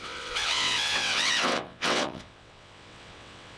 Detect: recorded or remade remade